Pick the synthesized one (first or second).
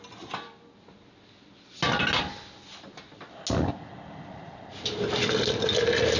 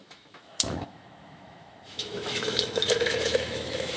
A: second